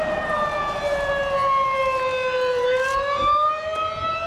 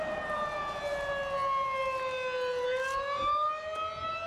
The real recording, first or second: second